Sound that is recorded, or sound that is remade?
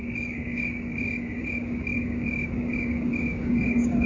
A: remade